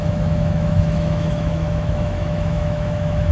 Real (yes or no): no